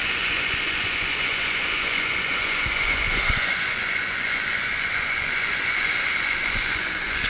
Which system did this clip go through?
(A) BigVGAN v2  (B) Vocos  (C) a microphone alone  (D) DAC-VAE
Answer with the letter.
B